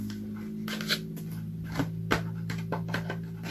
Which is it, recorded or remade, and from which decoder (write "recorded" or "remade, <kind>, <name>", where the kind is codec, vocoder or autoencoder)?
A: recorded